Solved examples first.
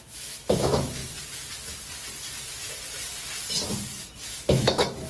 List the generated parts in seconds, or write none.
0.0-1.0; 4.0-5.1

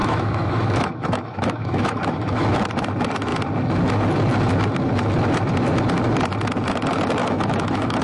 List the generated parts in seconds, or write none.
0.0-2.6; 7.2-8.0

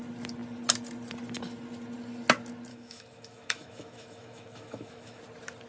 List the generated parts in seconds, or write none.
2.7-5.2

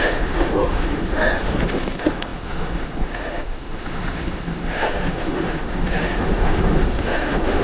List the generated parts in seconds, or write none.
0.0-7.6